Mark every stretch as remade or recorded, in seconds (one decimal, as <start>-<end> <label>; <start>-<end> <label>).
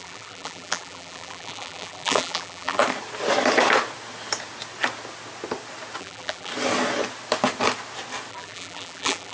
0.0-2.8 remade; 2.8-6.0 recorded; 6.0-6.5 remade; 6.5-8.3 recorded; 8.3-9.3 remade